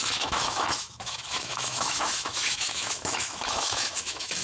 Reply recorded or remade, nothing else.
remade